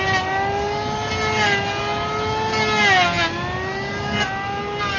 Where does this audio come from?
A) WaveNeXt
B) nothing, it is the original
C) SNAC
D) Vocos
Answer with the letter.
B